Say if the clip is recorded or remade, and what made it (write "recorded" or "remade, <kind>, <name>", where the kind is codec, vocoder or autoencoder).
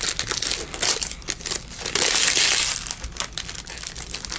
recorded